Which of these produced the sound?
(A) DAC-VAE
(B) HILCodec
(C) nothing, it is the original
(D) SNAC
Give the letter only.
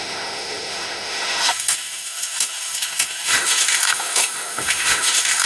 A